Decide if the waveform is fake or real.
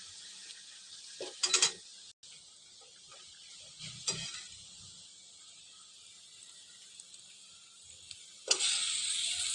real